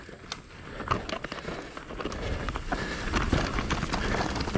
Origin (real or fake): real